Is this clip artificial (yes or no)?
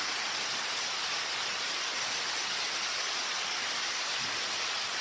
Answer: no